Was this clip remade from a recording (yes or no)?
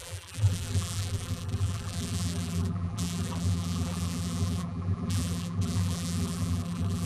yes